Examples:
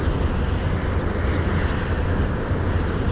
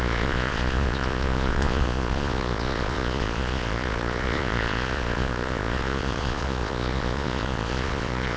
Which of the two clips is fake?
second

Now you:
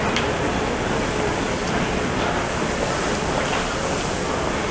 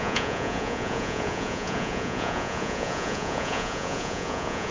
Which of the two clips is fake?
second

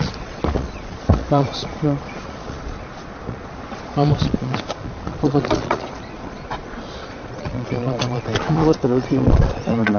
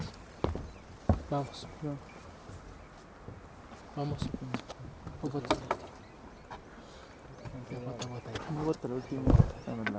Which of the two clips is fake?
first